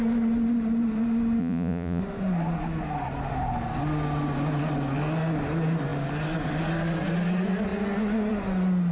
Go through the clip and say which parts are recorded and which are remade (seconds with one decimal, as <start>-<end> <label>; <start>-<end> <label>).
0.0-1.4 recorded; 1.4-2.0 remade; 2.0-8.9 recorded